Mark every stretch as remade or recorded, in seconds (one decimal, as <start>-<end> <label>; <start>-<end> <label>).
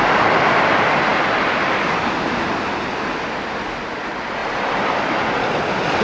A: 0.0-6.0 recorded